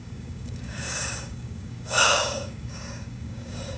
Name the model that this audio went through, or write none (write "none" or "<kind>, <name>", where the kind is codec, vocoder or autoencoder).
codec, DAC